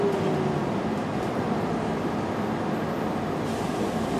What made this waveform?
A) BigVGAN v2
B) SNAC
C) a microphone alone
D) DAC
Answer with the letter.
C